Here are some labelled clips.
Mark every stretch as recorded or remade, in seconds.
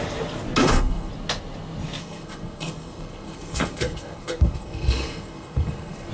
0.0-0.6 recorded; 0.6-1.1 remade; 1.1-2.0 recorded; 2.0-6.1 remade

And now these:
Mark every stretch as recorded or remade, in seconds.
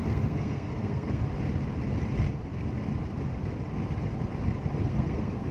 0.0-1.2 remade; 1.2-4.8 recorded; 4.8-5.5 remade